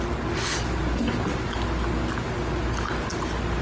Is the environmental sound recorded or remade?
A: recorded